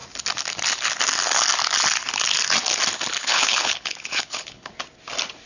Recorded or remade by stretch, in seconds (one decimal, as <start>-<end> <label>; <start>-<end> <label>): 0.0-3.2 recorded; 3.2-4.7 remade; 4.7-5.5 recorded